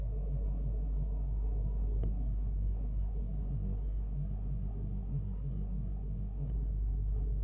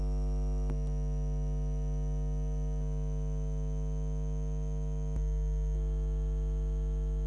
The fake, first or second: first